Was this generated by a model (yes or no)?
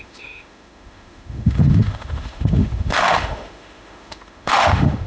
yes